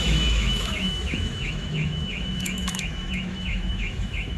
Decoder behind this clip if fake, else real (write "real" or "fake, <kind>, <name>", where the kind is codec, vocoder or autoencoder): fake, autoencoder, DAC-VAE